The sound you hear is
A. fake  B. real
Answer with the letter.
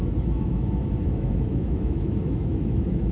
A